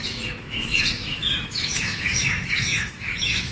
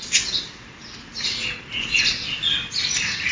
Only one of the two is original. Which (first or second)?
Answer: second